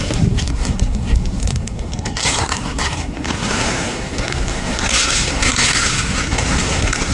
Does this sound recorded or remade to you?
remade